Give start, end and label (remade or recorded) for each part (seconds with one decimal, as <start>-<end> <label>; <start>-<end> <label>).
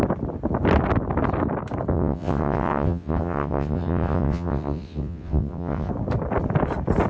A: 0.0-1.9 recorded; 1.9-5.9 remade; 5.9-7.1 recorded